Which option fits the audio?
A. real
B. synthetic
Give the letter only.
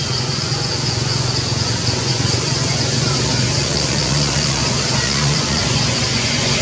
B